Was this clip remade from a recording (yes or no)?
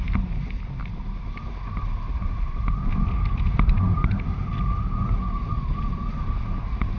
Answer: no